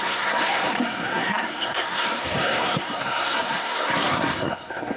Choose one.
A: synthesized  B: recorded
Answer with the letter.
A